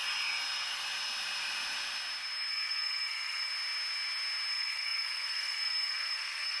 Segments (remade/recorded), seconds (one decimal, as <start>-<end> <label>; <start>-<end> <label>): 0.0-2.5 recorded; 2.5-3.5 remade; 3.5-4.5 recorded; 4.5-6.6 remade

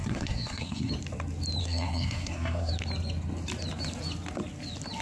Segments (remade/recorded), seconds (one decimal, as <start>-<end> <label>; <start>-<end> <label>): 0.0-0.9 remade; 0.9-1.6 recorded; 1.6-2.7 remade; 2.7-5.0 recorded

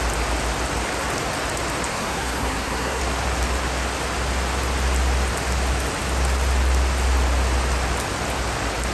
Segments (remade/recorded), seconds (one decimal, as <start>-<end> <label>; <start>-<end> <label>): 0.0-1.9 recorded; 1.9-3.0 remade; 3.0-8.9 recorded

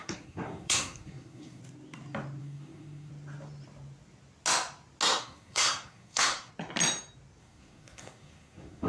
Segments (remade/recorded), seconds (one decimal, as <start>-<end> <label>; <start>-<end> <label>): 0.0-1.6 remade; 1.6-2.4 recorded; 2.4-3.1 remade; 3.1-5.2 recorded; 5.2-6.5 remade; 6.5-7.4 recorded; 7.4-8.9 remade

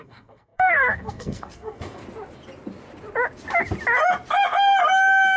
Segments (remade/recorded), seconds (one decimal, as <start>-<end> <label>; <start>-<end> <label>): 0.0-2.0 remade; 2.0-5.4 recorded

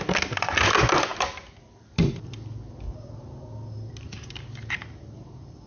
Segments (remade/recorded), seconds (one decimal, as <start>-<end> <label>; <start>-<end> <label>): 0.0-5.7 recorded

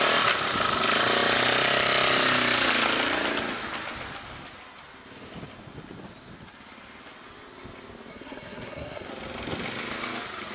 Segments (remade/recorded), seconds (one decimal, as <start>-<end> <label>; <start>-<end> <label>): 0.0-8.1 recorded; 8.1-9.1 remade; 9.1-10.5 recorded

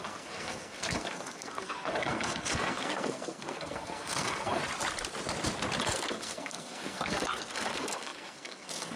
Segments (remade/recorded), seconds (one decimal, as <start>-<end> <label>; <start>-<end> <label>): 0.0-4.6 remade; 4.6-5.8 recorded; 5.8-9.0 remade